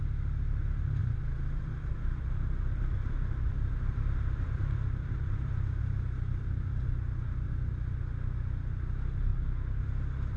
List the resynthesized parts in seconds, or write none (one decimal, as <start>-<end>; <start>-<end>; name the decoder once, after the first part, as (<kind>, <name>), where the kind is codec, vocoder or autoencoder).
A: 1.0-5.8 (vocoder, BigVGAN v2); 9.3-9.8